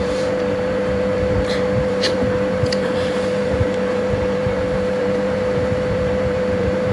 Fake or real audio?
fake